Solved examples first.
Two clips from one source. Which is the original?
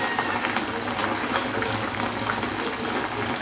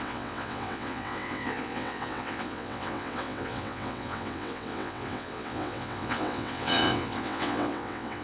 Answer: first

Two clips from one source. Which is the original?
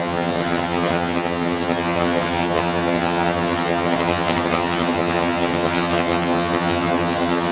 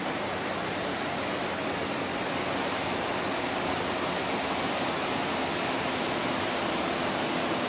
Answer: second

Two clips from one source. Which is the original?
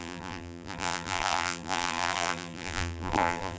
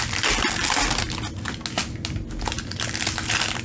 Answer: second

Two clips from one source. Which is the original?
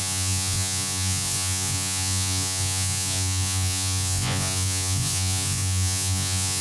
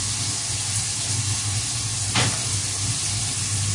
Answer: second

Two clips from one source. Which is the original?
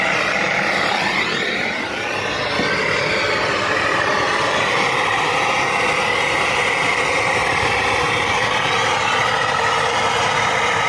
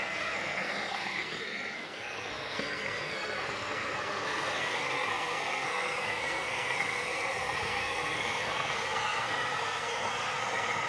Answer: first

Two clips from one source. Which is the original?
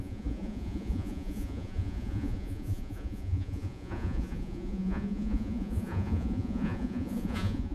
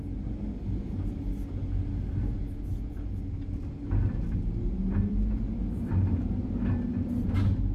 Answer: second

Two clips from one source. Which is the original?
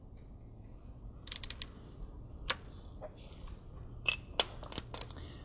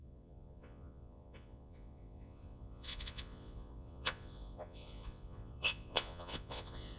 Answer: first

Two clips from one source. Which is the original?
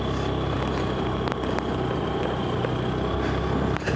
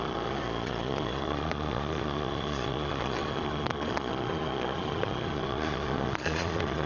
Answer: first